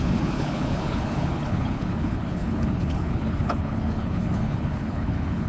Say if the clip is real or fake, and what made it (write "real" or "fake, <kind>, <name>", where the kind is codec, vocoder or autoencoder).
fake, codec, HILCodec